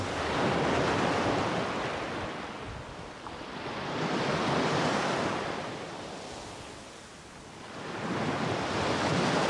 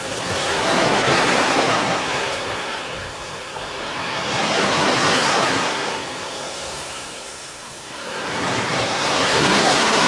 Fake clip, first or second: second